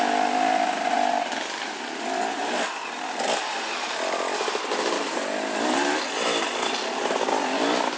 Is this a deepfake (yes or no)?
no